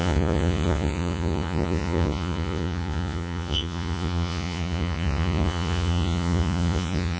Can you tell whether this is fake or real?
fake